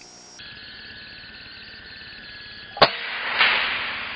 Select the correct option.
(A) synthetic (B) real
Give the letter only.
B